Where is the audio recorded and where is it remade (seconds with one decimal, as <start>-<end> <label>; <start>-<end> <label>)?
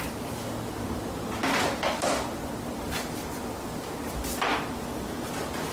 0.0-5.7 recorded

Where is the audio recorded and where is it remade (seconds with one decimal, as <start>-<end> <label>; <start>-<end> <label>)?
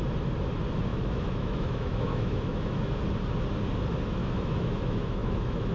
0.0-0.9 recorded; 0.9-3.0 remade; 3.0-4.2 recorded; 4.2-5.7 remade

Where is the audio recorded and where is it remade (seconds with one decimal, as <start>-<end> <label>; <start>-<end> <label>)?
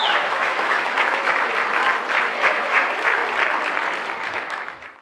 0.0-1.5 remade; 1.5-2.1 recorded; 2.1-3.2 remade; 3.2-4.3 recorded; 4.3-5.0 remade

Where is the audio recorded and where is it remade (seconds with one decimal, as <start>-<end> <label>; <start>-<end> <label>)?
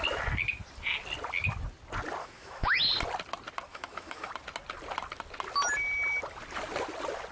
0.0-2.2 recorded; 2.2-2.8 remade; 2.8-3.7 recorded; 3.7-4.3 remade; 4.3-7.3 recorded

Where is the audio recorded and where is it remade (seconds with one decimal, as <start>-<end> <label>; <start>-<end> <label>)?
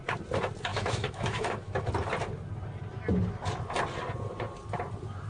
0.0-0.7 recorded; 0.7-1.9 remade; 1.9-5.3 recorded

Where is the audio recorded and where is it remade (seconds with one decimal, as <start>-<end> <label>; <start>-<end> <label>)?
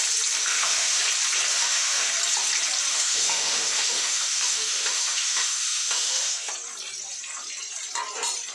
0.0-0.4 recorded; 0.4-1.0 remade; 1.0-1.5 recorded; 1.5-2.1 remade; 2.1-2.9 recorded; 2.9-6.5 remade; 6.5-8.5 recorded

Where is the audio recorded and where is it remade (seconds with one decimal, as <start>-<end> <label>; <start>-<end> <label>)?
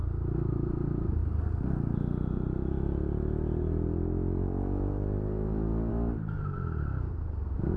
0.0-7.8 recorded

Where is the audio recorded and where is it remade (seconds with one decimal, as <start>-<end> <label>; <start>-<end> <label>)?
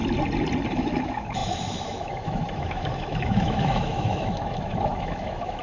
0.0-0.7 recorded; 0.7-5.6 remade